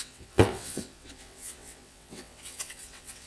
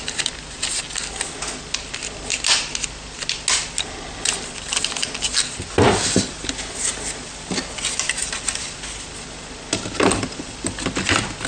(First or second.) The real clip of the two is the second